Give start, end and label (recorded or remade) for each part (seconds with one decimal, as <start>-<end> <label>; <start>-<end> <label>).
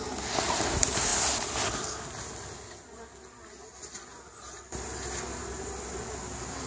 0.0-6.7 recorded